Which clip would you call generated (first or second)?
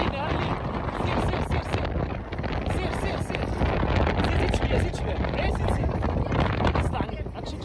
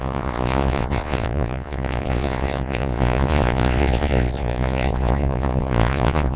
second